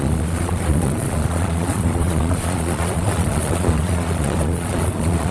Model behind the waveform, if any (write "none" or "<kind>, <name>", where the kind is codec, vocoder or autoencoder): vocoder, Vocos